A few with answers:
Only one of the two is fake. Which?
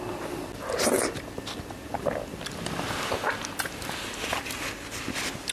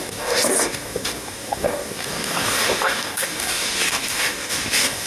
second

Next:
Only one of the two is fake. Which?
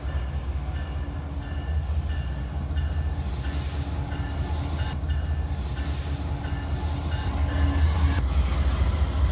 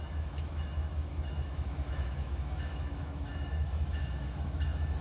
second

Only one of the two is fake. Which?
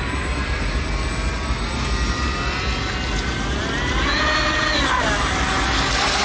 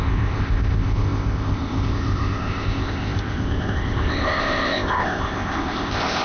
second